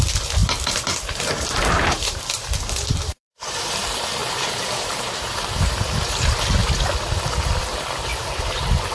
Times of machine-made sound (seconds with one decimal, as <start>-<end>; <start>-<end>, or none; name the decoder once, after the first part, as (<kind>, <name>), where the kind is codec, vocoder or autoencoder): 0.0-6.6 (vocoder, BigVGAN v2); 7.6-8.9